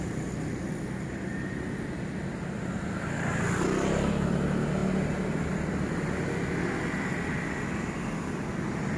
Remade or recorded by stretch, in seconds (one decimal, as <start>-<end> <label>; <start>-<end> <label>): 0.0-9.0 recorded